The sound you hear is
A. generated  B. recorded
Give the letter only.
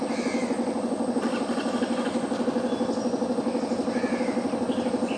B